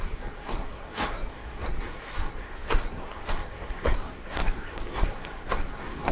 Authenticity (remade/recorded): remade